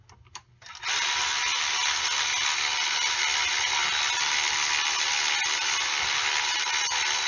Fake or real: real